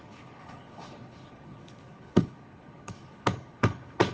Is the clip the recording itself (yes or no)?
no